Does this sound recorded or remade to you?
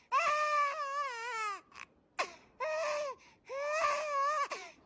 recorded